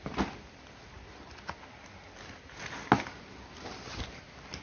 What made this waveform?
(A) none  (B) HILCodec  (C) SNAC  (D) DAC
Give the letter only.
A